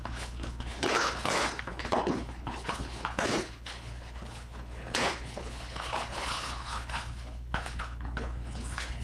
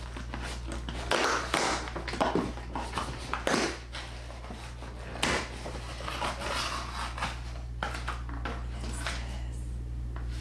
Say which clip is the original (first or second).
second